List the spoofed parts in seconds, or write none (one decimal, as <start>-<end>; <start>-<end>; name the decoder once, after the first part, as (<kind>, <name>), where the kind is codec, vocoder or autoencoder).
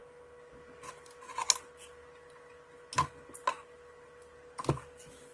none